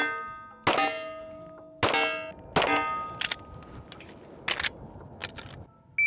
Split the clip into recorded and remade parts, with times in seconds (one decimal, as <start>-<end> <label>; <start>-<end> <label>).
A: 0.0-6.1 recorded